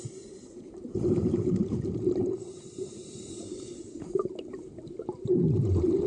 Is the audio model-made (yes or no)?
yes